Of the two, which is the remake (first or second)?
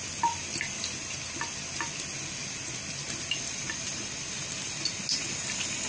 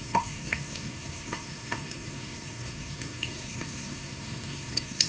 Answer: second